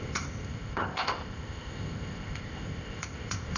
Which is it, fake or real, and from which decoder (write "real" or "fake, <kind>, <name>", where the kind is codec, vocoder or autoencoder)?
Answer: fake, codec, ZipCodec